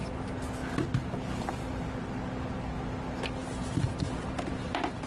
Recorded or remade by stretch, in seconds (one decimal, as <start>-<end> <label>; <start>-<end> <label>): 0.0-5.1 recorded